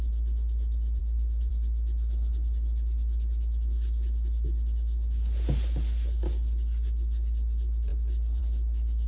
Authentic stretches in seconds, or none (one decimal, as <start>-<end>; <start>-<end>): 0.0-1.0; 1.5-9.1